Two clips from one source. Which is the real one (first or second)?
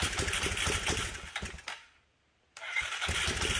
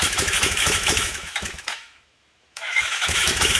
first